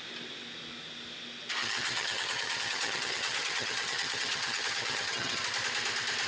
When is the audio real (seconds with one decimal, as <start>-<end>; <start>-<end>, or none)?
0.0-1.6; 5.4-6.3